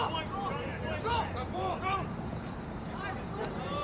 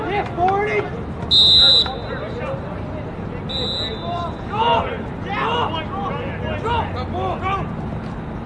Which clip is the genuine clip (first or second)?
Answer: second